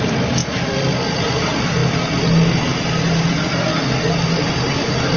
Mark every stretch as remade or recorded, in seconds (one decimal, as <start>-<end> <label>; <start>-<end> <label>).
0.0-0.4 recorded; 0.4-1.2 remade; 1.2-5.2 recorded